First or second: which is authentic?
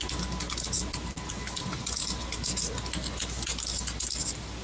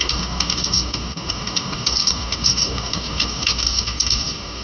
first